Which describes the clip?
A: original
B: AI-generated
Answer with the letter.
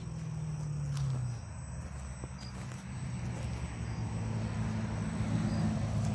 A